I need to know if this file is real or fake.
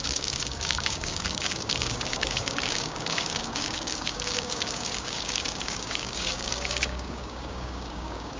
fake